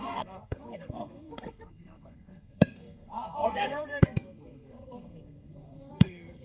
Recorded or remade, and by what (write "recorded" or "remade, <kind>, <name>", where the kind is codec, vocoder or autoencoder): remade, codec, SNAC